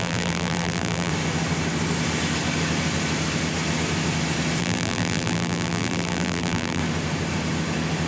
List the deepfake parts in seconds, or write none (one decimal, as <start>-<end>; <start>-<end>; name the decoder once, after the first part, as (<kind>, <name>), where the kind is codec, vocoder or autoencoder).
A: 0.0-1.1 (vocoder, BigVGAN v2); 4.6-6.8